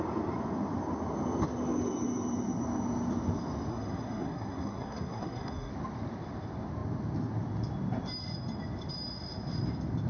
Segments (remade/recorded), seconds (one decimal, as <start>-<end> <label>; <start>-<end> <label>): 0.0-3.7 recorded; 3.7-5.7 remade; 5.7-10.1 recorded